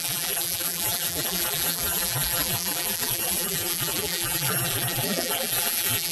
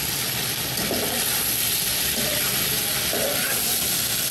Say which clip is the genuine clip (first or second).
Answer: second